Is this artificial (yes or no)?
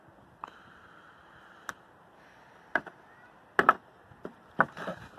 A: no